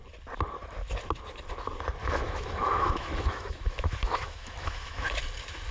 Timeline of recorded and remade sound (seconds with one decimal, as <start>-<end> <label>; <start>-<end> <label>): 0.0-2.0 recorded; 2.0-5.2 remade; 5.2-5.7 recorded